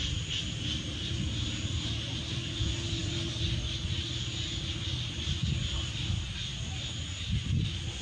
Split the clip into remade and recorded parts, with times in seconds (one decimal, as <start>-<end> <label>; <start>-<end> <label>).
0.0-8.0 recorded